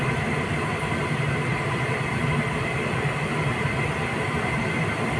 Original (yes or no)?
yes